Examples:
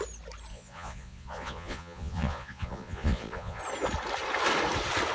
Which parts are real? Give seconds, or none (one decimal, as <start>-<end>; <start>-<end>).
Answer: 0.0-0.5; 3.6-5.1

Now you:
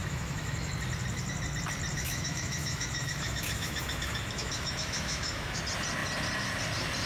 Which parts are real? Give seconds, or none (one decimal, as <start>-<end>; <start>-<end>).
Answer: 0.7-1.9; 5.6-7.1

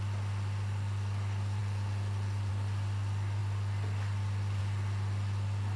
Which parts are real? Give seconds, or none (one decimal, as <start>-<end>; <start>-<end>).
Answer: 0.0-5.8

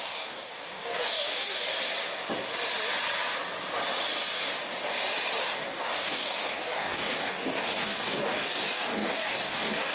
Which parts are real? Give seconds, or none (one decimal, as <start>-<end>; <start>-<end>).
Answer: 1.7-5.4